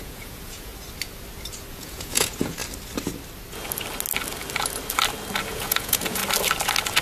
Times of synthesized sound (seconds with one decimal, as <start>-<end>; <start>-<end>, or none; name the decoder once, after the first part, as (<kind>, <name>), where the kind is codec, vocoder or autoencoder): 0.0-0.7 (vocoder, Vocos); 1.7-2.6; 5.5-6.2